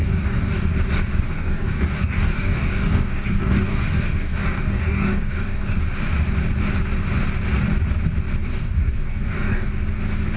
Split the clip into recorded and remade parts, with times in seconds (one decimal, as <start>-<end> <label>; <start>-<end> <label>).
0.0-0.7 remade; 0.7-1.1 recorded; 1.1-5.8 remade; 5.8-8.4 recorded; 8.4-9.7 remade; 9.7-10.4 recorded